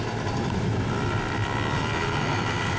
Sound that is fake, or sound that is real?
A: real